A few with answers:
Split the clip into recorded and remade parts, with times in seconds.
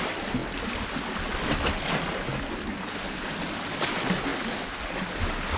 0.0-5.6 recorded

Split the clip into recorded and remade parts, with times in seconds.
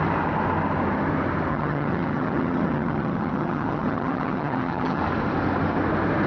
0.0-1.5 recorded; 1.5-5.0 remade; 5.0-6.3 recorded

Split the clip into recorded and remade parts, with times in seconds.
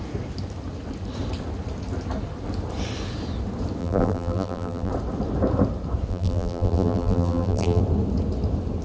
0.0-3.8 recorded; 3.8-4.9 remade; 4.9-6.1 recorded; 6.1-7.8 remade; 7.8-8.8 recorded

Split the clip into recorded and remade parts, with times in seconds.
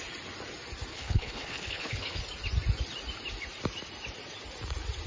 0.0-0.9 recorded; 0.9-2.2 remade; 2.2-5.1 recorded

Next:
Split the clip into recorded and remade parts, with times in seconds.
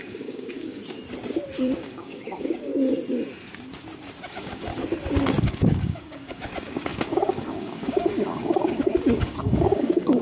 0.0-0.8 remade; 0.8-1.6 recorded; 1.6-2.7 remade; 2.7-4.3 recorded; 4.3-4.7 remade; 4.7-5.4 recorded; 5.4-10.2 remade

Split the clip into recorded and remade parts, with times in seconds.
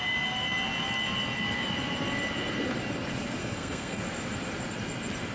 0.0-3.4 recorded; 3.4-4.0 remade; 4.0-5.3 recorded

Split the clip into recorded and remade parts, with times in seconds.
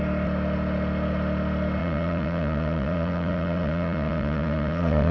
0.0-1.8 recorded; 1.8-5.1 remade